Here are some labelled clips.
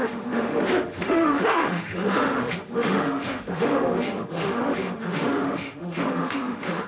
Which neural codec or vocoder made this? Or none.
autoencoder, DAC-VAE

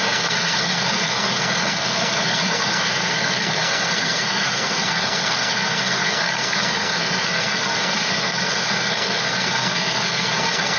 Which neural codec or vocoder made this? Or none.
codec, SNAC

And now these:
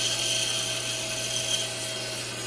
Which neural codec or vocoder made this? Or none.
none